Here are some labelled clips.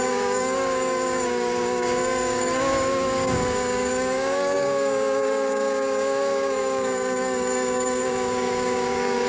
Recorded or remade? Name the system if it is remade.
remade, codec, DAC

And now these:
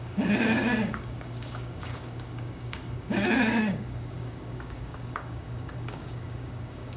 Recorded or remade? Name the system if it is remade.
remade, codec, DAC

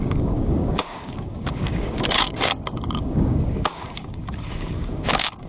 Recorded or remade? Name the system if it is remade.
remade, codec, DAC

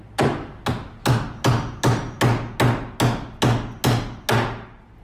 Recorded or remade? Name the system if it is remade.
recorded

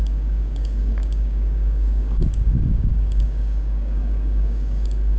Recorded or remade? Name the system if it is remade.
remade, codec, DAC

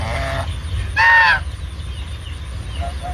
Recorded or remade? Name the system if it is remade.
recorded